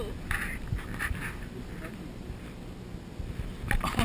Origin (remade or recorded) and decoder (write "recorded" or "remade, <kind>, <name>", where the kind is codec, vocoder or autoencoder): recorded